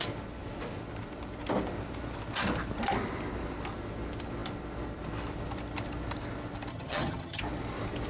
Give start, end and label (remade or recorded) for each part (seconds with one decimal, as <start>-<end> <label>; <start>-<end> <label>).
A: 0.0-6.7 recorded; 6.7-7.4 remade; 7.4-8.1 recorded